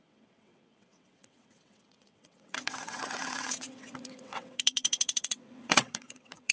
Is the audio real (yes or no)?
no